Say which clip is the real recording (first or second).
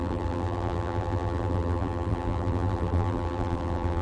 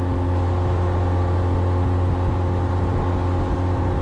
second